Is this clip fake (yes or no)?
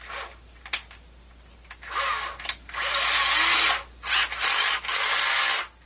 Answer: no